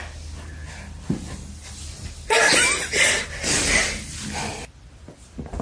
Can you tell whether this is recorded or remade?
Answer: recorded